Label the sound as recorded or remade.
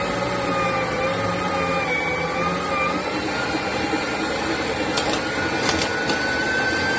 recorded